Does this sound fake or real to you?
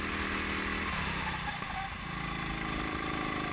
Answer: real